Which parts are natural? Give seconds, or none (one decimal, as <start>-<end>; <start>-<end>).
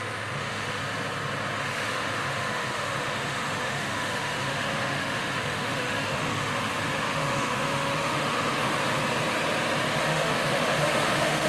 0.8-1.6; 8.8-10.0